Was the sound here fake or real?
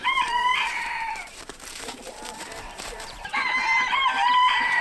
fake